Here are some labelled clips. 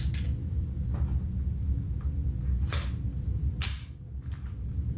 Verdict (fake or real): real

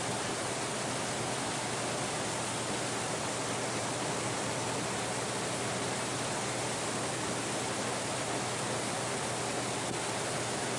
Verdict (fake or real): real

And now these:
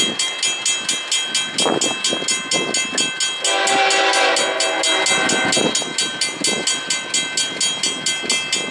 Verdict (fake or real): real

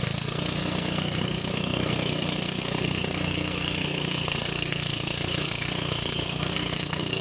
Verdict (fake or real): fake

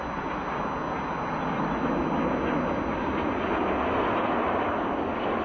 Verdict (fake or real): real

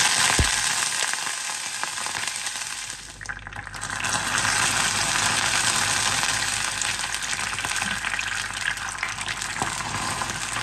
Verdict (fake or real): real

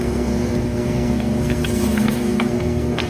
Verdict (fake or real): fake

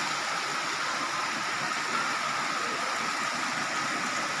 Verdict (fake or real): real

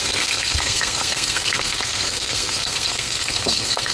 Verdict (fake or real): fake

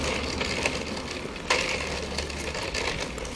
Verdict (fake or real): real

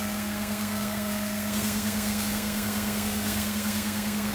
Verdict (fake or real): fake